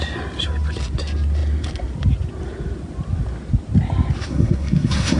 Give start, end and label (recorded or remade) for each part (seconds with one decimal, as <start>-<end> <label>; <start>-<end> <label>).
0.0-4.3 recorded; 4.3-5.2 remade